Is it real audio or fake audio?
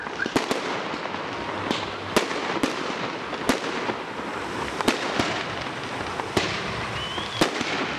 real